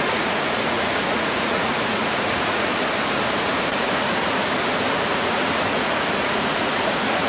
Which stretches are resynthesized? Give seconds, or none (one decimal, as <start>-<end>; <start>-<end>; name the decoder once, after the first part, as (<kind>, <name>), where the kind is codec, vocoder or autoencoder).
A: 0.0-2.7 (vocoder, Vocos); 3.7-4.4; 4.9-7.3